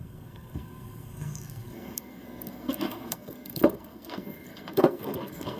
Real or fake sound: fake